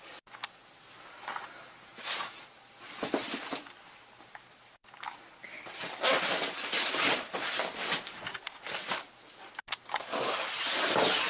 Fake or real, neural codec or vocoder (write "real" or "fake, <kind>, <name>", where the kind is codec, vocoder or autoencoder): real